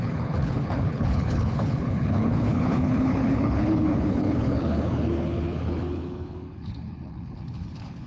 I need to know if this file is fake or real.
fake